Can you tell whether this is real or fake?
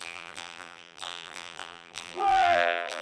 fake